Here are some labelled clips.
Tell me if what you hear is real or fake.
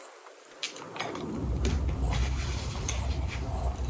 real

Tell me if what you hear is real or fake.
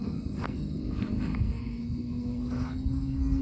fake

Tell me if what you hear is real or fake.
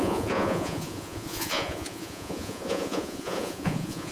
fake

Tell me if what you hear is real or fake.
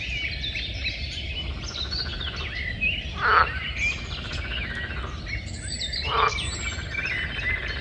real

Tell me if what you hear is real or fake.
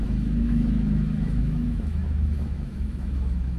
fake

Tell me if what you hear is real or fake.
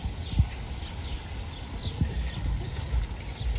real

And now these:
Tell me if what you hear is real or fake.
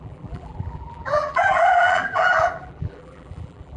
fake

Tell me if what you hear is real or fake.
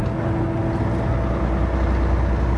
real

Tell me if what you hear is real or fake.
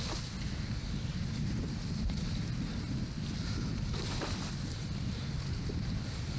real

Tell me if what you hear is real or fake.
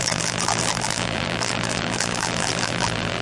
fake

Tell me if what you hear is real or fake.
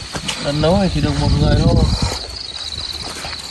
real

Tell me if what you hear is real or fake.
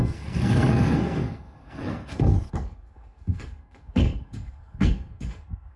fake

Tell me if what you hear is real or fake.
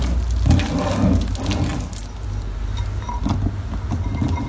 real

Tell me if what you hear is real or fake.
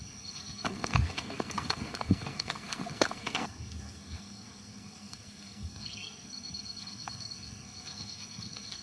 fake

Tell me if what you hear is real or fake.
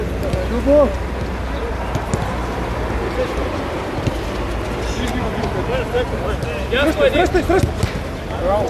real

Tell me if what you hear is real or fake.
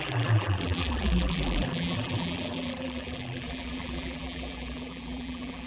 fake